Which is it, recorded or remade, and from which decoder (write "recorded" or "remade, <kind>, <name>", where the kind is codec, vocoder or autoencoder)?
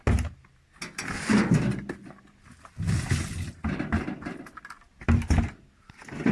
recorded